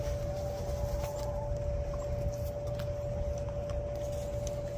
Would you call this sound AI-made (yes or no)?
no